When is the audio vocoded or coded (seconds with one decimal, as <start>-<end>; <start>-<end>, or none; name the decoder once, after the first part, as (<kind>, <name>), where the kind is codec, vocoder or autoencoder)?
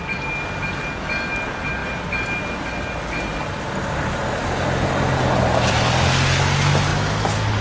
none